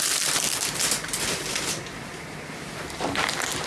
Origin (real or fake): real